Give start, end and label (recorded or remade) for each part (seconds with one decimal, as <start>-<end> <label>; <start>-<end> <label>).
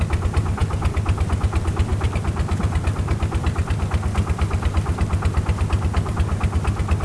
0.0-7.0 recorded